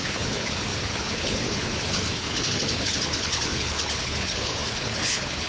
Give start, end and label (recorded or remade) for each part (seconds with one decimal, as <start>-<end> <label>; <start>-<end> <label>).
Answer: 0.0-5.5 remade